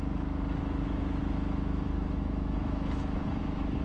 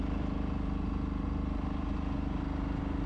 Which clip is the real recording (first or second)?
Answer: second